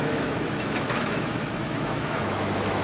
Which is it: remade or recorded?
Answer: remade